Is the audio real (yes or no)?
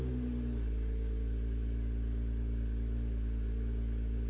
yes